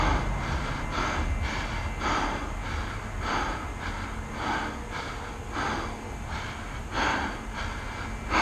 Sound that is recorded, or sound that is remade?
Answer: recorded